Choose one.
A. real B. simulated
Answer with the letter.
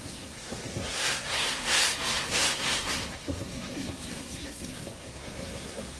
B